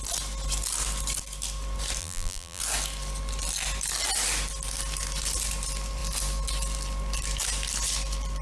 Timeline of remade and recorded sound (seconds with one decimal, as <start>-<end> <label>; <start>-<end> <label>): 0.0-2.0 recorded; 2.0-2.6 remade; 2.6-8.4 recorded

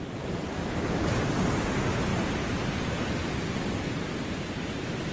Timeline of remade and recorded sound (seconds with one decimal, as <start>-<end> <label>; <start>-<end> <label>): 0.0-2.1 recorded; 2.1-2.7 remade; 2.7-5.1 recorded

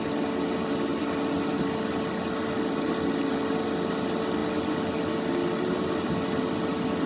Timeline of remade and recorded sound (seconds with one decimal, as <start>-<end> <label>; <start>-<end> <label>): 0.0-7.1 recorded